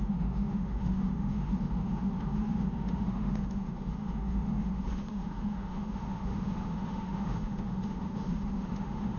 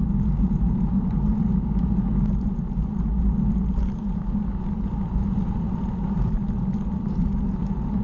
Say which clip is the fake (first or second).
first